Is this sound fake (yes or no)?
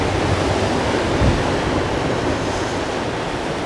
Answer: no